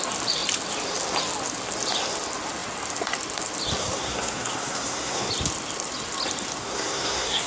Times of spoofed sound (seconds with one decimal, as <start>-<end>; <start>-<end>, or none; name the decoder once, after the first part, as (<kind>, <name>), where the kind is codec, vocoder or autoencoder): 3.8-5.3 (codec, SNAC); 6.6-7.5